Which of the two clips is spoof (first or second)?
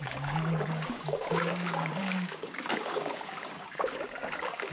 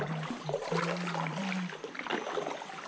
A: first